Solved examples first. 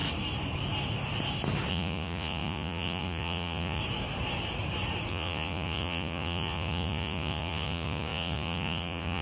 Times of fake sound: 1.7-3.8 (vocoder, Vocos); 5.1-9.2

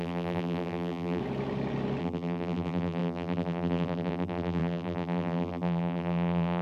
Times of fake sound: 0.0-1.2 (vocoder, BigVGAN v2); 2.0-6.6